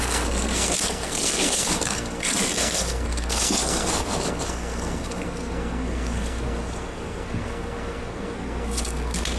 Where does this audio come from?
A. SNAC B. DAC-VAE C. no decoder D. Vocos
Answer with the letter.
A